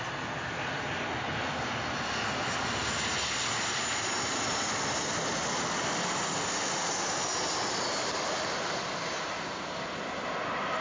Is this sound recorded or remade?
recorded